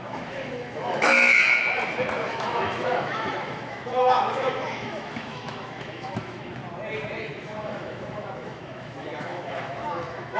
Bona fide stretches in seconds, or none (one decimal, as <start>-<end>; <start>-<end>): 1.6-2.3; 6.6-7.2